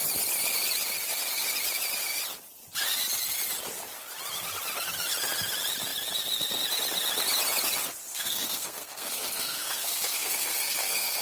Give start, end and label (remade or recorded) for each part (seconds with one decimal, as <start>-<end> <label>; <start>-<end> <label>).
0.0-8.1 recorded; 8.1-11.2 remade